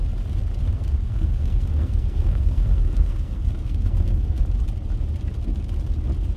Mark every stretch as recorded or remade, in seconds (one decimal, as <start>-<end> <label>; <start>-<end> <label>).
0.0-0.6 recorded; 0.6-4.4 remade; 4.4-6.4 recorded